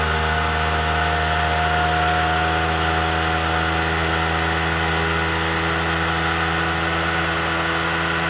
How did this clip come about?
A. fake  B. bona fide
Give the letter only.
B